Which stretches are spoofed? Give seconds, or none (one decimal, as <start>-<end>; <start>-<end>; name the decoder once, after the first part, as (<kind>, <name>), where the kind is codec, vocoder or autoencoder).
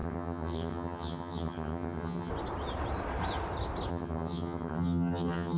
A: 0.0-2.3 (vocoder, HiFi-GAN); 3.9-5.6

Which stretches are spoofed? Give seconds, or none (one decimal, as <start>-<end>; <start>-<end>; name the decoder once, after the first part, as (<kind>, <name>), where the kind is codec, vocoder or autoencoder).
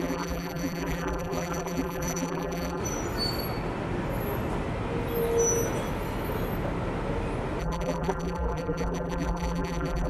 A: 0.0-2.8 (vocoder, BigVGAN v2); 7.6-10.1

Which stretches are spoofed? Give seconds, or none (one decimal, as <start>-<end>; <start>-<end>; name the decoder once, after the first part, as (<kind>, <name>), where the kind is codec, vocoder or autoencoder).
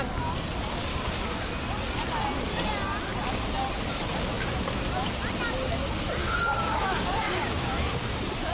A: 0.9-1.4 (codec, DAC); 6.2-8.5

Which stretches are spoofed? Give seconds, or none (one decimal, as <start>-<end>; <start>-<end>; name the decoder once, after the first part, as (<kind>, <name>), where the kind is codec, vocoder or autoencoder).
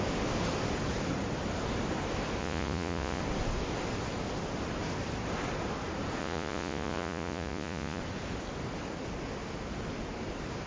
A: 2.4-3.2 (vocoder, Vocos); 6.2-8.0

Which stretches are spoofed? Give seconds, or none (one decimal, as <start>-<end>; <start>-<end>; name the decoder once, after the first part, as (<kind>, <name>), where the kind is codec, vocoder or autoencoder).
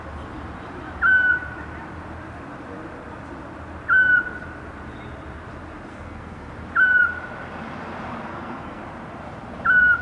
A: 5.9-6.5 (codec, SNAC); 8.3-8.8